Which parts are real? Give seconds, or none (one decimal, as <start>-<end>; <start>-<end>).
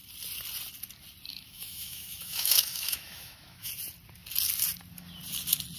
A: 0.0-1.3; 3.7-5.8